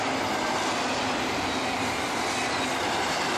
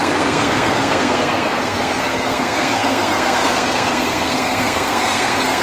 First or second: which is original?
first